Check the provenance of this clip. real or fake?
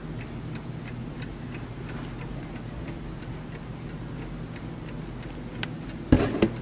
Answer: real